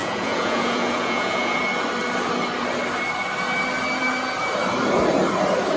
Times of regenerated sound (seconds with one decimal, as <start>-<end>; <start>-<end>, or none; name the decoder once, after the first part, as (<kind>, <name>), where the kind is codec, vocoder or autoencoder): 0.0-1.6 (vocoder, Vocos)